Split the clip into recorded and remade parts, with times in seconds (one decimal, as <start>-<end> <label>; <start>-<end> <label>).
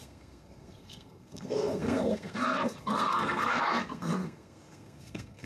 0.0-5.5 remade